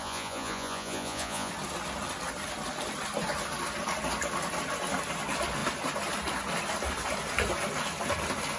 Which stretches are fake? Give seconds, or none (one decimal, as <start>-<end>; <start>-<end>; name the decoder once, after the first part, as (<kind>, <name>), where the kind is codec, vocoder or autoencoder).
0.0-1.5 (vocoder, Vocos)